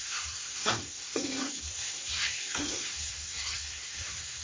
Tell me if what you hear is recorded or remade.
remade